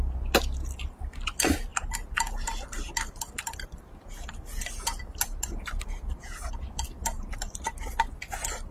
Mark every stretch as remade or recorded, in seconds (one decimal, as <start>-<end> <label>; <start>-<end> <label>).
0.0-8.7 recorded